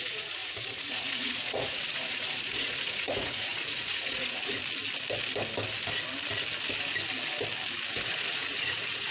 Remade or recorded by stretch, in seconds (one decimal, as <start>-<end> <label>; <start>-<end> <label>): 0.0-4.6 remade; 4.6-7.9 recorded; 7.9-9.1 remade